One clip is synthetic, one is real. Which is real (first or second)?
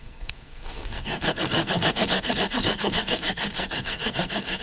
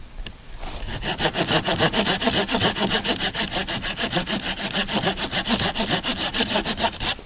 second